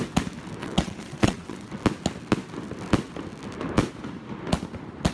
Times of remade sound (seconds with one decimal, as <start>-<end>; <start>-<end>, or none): 0.6-1.7